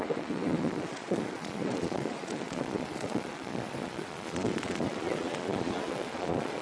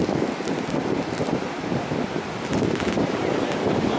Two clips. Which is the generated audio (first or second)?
first